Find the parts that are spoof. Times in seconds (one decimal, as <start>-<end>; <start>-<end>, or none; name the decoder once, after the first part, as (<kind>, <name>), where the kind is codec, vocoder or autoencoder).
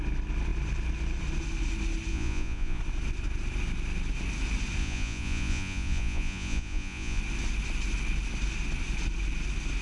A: 2.1-2.8 (vocoder, Vocos); 4.8-7.2